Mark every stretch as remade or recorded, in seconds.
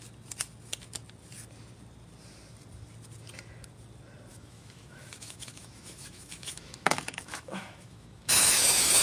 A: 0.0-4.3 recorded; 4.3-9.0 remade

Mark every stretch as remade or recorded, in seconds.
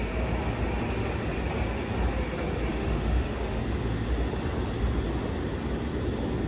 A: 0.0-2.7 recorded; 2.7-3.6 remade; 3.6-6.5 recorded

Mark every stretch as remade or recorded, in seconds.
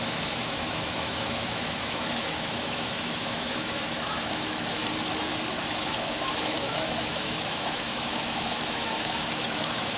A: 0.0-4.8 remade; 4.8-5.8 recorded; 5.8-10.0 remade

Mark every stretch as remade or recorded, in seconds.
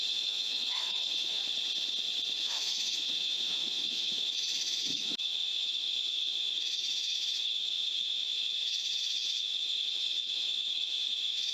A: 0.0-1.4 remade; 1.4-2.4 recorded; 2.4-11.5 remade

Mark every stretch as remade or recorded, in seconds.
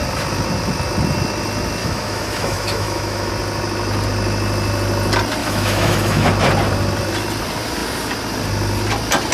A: 0.0-1.8 recorded; 1.8-3.3 remade; 3.3-5.4 recorded; 5.4-6.3 remade; 6.3-9.3 recorded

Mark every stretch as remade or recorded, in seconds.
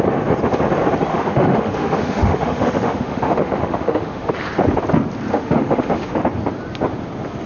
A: 0.0-1.1 recorded; 1.1-4.3 remade; 4.3-5.3 recorded; 5.3-6.2 remade; 6.2-7.5 recorded